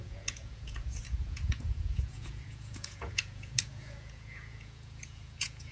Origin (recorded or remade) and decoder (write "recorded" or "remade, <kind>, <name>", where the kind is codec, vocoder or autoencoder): remade, vocoder, Vocos